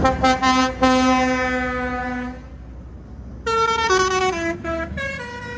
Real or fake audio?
real